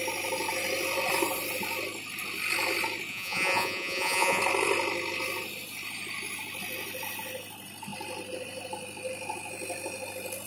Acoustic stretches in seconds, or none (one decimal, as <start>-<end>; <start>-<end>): 0.0-3.1; 4.4-10.5